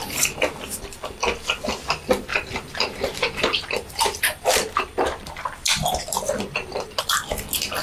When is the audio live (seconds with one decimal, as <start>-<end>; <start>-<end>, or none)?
0.0-2.3; 7.0-7.8